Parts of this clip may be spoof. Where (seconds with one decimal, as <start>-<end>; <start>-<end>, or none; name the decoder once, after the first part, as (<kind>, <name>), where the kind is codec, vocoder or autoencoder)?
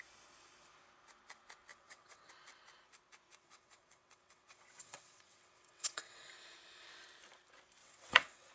1.7-2.3 (vocoder, WaveNeXt); 3.4-6.3; 7.8-8.5